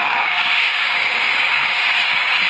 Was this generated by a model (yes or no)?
yes